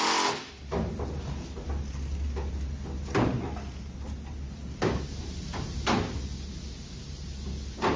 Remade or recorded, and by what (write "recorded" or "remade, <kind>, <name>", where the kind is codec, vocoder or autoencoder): recorded